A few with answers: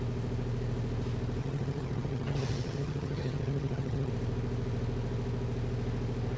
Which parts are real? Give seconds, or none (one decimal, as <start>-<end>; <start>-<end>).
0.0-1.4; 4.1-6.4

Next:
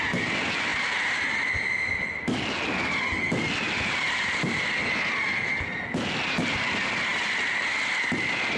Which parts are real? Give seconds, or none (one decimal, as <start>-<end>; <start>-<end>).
0.0-8.6

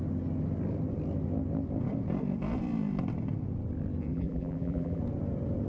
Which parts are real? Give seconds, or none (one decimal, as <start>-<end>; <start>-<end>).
0.0-4.1; 5.0-5.7

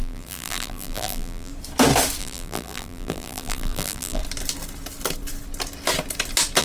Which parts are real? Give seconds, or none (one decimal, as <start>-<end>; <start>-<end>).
1.5-2.2; 4.2-6.6